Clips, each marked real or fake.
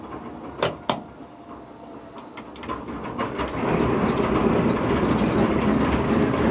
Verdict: real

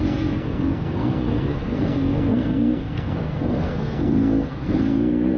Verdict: fake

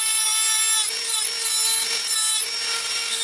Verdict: real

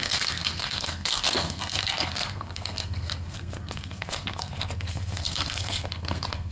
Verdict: fake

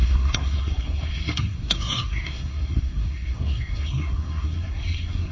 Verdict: fake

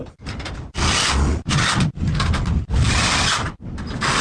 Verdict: real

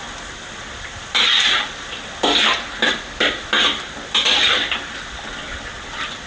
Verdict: real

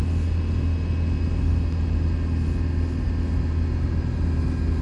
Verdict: real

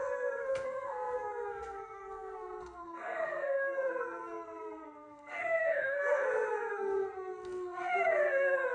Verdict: fake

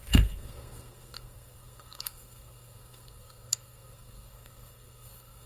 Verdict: fake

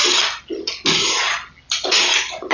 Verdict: real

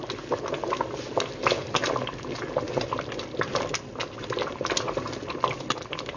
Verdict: real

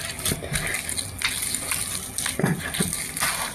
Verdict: real